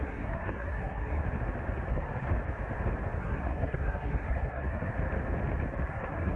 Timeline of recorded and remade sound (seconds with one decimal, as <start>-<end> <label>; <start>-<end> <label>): 0.0-1.2 remade; 1.2-1.9 recorded; 1.9-2.3 remade; 2.3-3.2 recorded; 3.2-4.9 remade; 4.9-5.9 recorded; 5.9-6.4 remade